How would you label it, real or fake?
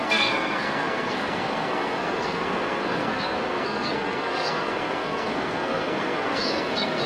fake